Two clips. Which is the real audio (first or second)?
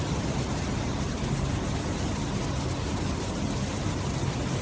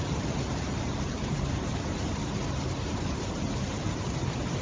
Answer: first